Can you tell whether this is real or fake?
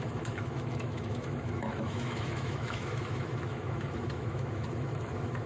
fake